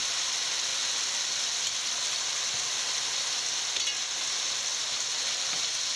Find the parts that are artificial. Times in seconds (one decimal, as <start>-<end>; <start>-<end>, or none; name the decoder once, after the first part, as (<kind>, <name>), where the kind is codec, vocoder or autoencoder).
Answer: none